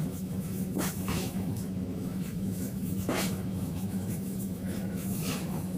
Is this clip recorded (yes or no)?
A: no